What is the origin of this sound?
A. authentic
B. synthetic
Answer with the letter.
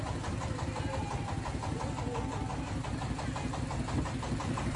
A